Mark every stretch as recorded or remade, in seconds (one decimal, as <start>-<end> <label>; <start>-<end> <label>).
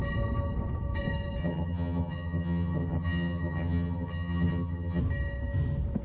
0.0-1.4 recorded; 1.4-5.0 remade; 5.0-6.0 recorded